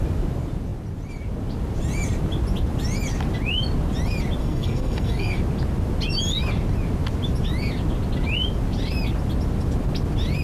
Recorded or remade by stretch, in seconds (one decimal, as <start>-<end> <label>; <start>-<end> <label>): 0.0-4.4 recorded; 4.4-5.4 remade; 5.4-10.4 recorded